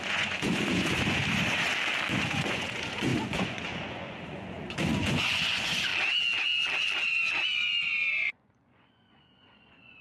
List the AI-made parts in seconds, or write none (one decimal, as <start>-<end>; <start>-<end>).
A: 0.0-1.2; 2.1-5.9; 7.5-10.0